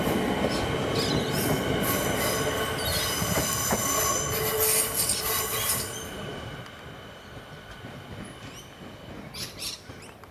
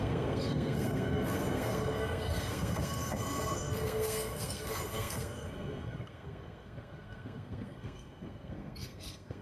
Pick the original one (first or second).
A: first